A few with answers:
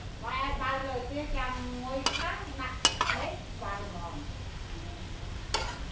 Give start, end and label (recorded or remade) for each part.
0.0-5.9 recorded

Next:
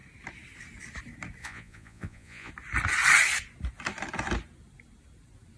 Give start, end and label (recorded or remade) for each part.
0.0-1.4 recorded; 1.4-2.5 remade; 2.5-5.6 recorded

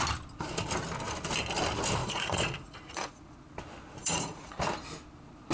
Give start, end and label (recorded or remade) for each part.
0.0-2.0 recorded; 2.0-3.2 remade; 3.2-4.0 recorded; 4.0-4.6 remade; 4.6-5.5 recorded